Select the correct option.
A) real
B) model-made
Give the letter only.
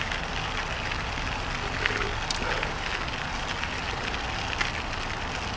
A